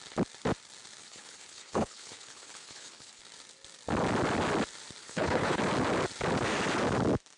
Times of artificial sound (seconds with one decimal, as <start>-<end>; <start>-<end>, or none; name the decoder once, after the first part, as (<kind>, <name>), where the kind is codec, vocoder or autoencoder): 1.0-3.2 (codec, HILCodec); 5.0-5.6